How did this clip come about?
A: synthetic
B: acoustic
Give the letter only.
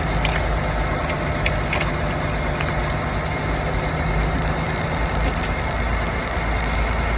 B